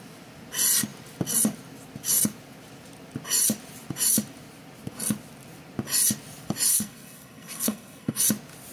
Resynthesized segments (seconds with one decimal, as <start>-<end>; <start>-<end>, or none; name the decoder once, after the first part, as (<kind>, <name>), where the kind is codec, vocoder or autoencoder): 6.7-8.2 (codec, SNAC)